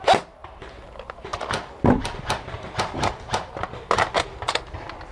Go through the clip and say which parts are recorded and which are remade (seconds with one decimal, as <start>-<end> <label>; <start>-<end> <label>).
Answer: 0.0-5.1 recorded